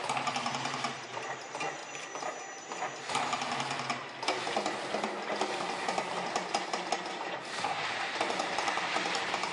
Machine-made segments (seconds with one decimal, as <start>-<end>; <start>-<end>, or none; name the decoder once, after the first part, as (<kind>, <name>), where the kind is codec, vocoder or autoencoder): 0.0-1.8 (vocoder, BigVGAN v2); 7.1-9.5